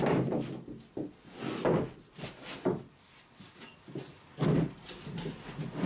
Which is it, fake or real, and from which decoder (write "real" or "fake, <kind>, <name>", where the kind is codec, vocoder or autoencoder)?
real